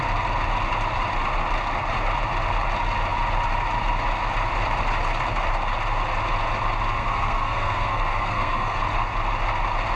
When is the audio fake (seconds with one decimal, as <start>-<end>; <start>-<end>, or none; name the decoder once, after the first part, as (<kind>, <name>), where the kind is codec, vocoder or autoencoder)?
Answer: 7.0-8.8 (codec, SNAC)